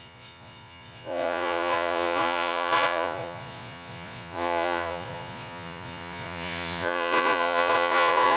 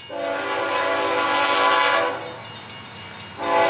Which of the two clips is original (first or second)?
second